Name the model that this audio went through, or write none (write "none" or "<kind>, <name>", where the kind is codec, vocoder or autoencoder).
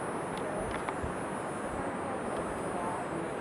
none